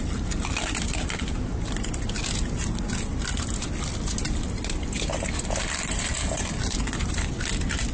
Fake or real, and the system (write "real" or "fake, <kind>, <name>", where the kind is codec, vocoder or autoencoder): real